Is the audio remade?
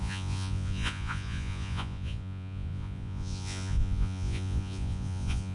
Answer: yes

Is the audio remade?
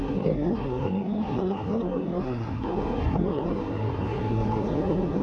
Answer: yes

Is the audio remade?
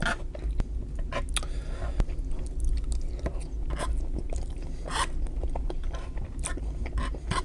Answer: no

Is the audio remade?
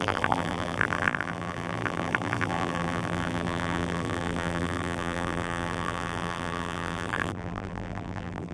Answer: yes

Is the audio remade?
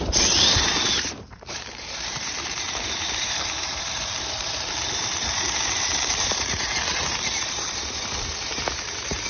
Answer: yes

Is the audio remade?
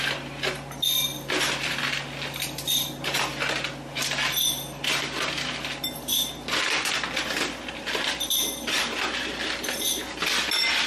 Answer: no